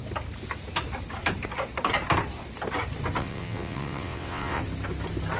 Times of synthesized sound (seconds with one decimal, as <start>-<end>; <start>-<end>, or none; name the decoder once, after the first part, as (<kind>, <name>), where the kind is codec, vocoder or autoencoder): 3.2-4.6 (vocoder, WaveNeXt)